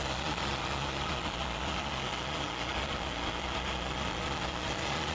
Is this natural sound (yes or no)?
no